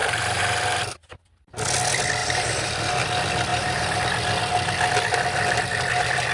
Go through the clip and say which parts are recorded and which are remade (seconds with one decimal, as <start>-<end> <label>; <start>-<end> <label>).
0.0-0.8 remade; 0.8-2.2 recorded; 2.2-2.7 remade; 2.7-3.5 recorded; 3.5-4.0 remade; 4.0-6.3 recorded